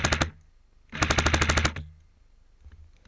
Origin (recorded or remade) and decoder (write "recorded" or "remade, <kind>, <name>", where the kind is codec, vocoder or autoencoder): recorded